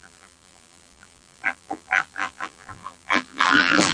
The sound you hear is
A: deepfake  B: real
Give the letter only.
A